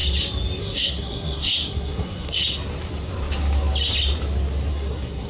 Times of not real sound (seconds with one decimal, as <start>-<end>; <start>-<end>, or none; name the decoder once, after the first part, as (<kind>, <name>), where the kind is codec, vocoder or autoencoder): 0.6-2.4 (codec, SNAC); 4.7-5.3